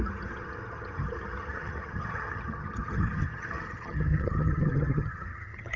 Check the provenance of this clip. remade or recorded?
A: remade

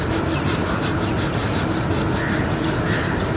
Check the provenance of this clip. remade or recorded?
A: recorded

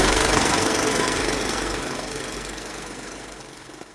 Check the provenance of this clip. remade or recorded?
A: remade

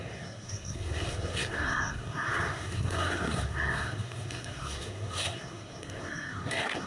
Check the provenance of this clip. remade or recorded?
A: remade